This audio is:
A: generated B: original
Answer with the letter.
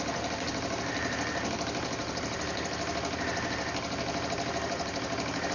B